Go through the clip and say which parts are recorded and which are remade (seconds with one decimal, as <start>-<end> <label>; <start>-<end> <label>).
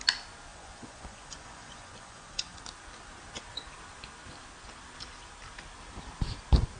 0.0-0.5 recorded; 0.5-2.6 remade; 2.6-6.8 recorded